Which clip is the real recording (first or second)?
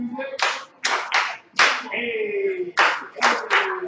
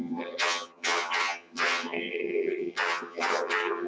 first